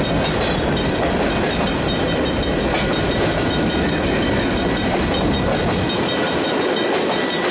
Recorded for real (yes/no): yes